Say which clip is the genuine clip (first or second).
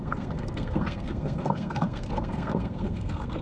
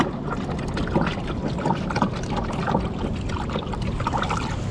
second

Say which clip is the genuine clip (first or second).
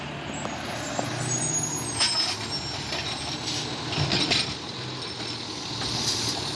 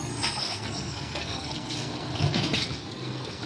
first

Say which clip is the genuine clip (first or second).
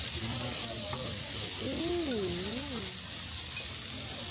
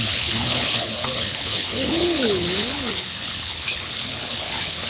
first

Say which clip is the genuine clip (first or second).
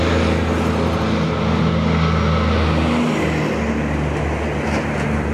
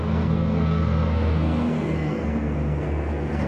first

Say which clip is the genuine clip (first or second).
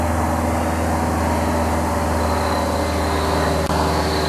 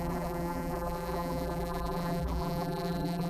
first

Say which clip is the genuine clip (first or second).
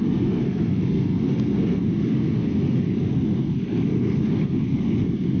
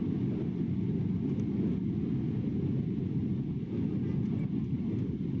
second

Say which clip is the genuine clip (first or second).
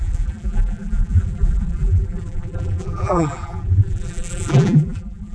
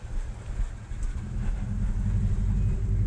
second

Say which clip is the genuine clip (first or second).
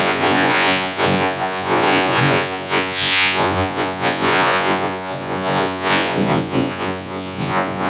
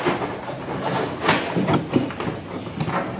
second